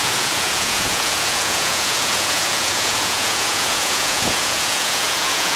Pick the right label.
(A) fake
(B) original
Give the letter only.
A